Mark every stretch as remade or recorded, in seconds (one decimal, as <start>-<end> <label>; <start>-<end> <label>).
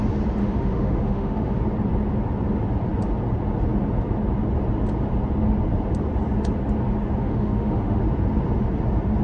0.0-0.4 recorded; 0.4-1.6 remade; 1.6-7.2 recorded; 7.2-8.0 remade; 8.0-9.2 recorded